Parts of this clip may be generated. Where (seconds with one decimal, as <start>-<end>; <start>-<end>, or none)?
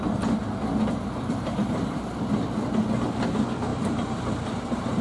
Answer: 1.6-2.2; 3.7-5.0